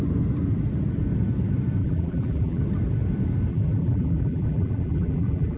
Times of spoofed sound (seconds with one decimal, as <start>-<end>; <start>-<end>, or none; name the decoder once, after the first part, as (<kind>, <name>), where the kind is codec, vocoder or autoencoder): 1.8-2.6 (vocoder, BigVGAN v2); 3.5-5.6